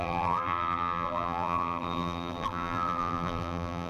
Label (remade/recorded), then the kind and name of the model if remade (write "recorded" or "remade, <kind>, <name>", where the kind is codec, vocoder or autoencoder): remade, vocoder, BigVGAN v2